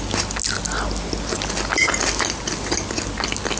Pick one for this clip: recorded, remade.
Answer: recorded